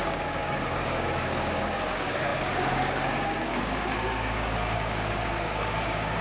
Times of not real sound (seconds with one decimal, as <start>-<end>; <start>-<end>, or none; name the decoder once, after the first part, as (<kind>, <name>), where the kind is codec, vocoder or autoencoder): 0.0-6.2 (codec, DAC)